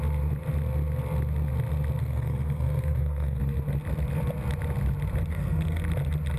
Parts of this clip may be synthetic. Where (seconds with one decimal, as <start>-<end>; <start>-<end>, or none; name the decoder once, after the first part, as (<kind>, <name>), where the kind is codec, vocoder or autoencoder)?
2.0-3.4 (codec, SNAC); 5.3-5.8